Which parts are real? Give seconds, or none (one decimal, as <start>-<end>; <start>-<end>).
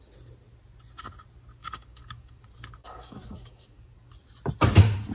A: 0.0-1.6; 2.4-2.8; 3.9-5.1